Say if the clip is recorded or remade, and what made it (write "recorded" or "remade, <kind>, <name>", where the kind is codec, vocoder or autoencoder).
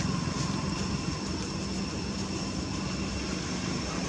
recorded